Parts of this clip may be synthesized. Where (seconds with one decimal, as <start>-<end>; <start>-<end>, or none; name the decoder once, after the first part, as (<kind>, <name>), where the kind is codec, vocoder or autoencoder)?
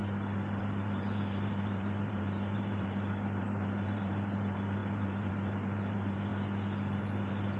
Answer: 0.6-6.3 (vocoder, BigVGAN v2); 7.0-7.6